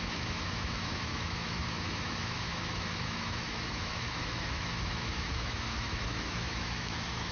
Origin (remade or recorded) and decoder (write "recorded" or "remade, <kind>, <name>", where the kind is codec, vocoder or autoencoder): remade, autoencoder, DAC-VAE